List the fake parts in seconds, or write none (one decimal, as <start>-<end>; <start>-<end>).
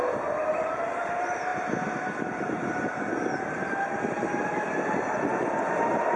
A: none